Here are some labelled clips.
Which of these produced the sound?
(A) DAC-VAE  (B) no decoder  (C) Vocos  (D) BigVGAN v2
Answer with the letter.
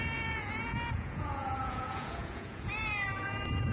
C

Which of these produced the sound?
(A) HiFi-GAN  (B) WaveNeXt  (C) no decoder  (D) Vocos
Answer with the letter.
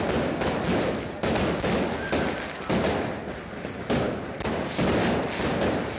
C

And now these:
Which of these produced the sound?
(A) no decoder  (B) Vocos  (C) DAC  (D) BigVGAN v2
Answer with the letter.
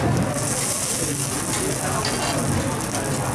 A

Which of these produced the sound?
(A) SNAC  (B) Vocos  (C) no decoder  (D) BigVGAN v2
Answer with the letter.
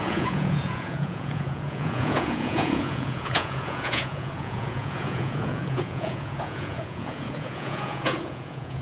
B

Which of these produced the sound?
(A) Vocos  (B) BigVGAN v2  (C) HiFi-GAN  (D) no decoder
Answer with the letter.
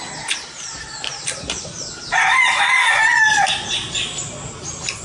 D